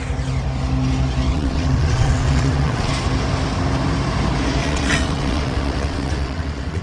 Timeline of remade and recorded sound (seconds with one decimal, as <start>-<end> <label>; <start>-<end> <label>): 0.0-1.3 recorded; 1.3-2.9 remade; 2.9-4.6 recorded; 4.6-6.8 remade